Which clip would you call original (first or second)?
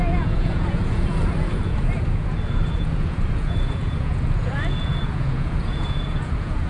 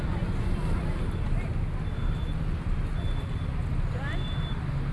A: second